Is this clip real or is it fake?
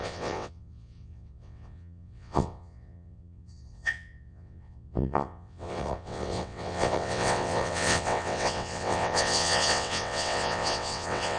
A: fake